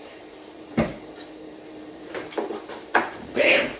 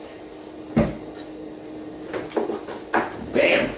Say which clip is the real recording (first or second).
second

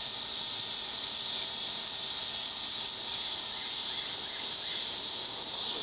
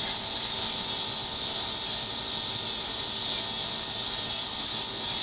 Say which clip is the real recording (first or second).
second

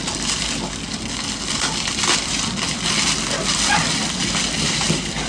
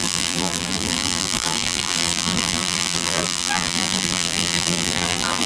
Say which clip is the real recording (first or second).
first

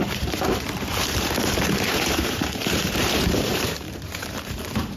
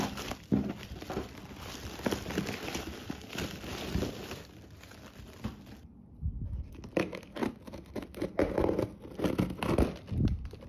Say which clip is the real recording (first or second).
second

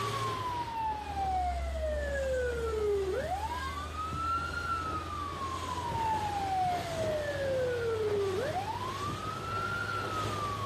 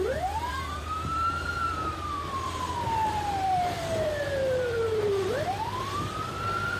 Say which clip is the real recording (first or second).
first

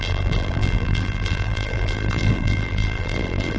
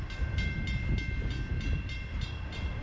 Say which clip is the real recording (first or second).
second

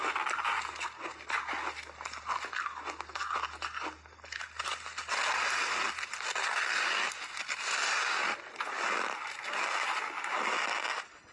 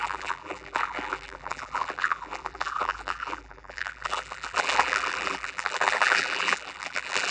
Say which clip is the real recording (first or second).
first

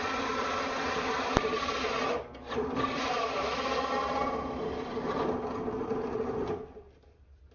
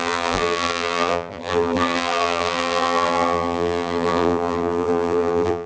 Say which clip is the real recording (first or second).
first